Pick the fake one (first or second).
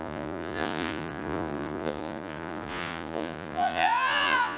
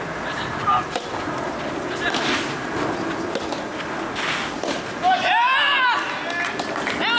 first